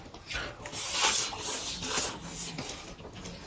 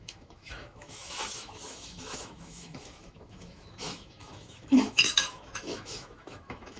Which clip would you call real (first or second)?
first